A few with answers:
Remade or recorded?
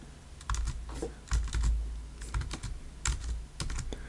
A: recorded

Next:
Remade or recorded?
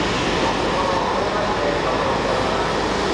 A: recorded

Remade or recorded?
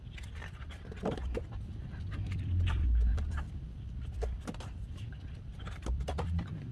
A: recorded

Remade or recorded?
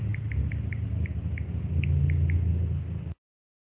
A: recorded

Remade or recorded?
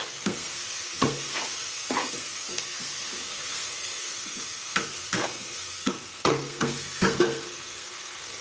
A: remade